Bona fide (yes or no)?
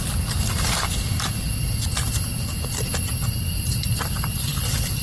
yes